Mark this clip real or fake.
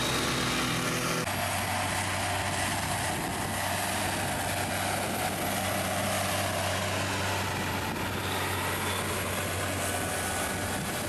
real